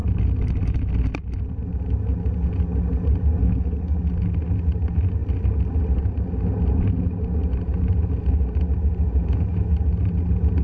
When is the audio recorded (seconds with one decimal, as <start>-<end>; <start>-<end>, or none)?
0.0-3.4; 4.1-10.6